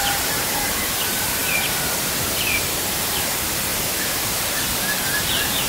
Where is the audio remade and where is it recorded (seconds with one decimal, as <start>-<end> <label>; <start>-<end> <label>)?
0.0-5.7 remade